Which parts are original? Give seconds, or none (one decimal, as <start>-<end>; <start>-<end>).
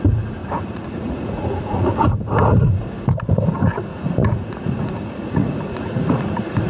0.0-0.4; 2.8-3.9